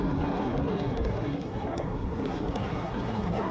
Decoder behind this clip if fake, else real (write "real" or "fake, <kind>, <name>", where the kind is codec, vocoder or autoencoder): fake, codec, SNAC